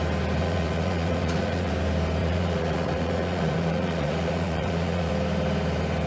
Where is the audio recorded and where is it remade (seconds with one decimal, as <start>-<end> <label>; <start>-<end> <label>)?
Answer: 0.0-0.4 recorded; 0.4-1.7 remade; 1.7-2.2 recorded; 2.2-5.1 remade; 5.1-6.1 recorded